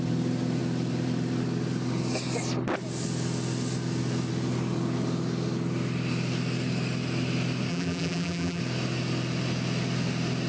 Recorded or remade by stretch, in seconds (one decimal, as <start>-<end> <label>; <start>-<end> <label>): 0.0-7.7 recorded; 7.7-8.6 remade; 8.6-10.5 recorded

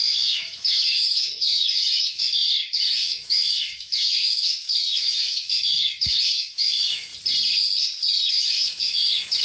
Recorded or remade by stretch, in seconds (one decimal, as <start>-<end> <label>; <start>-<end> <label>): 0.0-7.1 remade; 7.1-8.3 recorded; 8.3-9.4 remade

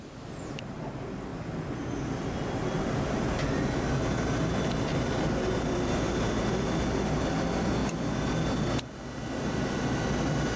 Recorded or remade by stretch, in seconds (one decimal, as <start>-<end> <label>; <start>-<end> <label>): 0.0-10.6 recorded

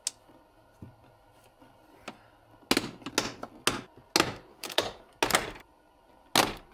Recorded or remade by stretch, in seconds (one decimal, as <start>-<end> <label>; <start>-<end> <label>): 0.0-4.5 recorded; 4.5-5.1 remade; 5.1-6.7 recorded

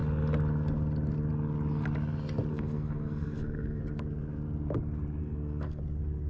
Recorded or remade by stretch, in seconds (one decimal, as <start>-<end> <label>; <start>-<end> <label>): 0.0-2.5 recorded; 2.5-3.8 remade; 3.8-5.2 recorded; 5.2-5.8 remade; 5.8-6.3 recorded

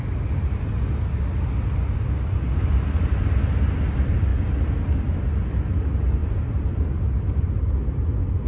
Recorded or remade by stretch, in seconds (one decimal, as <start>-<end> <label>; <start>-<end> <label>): 0.0-6.2 recorded; 6.2-7.8 remade; 7.8-8.5 recorded